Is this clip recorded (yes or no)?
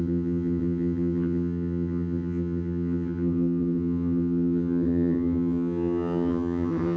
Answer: no